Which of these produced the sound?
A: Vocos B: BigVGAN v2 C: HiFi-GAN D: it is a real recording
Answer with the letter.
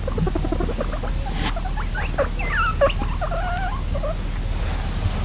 D